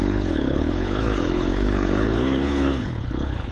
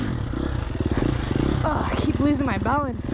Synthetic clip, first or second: first